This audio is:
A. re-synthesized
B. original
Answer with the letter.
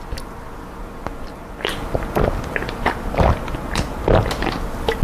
B